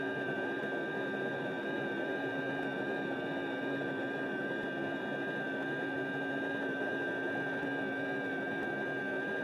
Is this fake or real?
real